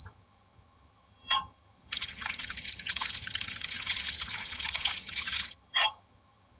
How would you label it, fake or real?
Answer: fake